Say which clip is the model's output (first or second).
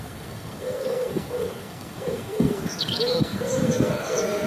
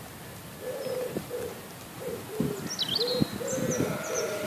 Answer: first